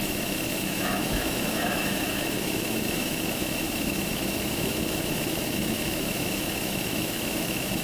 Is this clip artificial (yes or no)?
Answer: yes